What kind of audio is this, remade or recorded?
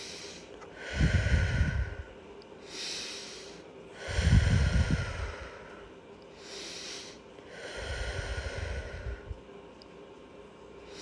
recorded